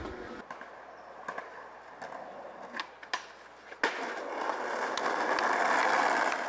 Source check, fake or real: real